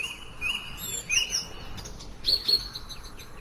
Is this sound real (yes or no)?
yes